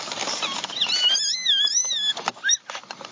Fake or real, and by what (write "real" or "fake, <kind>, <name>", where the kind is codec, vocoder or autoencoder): real